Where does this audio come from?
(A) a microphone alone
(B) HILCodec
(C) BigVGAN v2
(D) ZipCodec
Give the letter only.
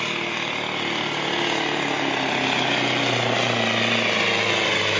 A